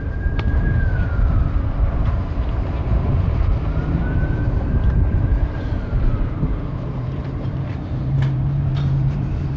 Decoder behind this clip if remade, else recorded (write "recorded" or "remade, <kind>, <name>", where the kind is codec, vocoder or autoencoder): remade, vocoder, BigVGAN v2